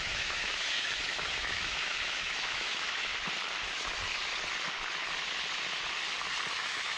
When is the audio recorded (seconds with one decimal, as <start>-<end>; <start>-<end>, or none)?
3.1-6.5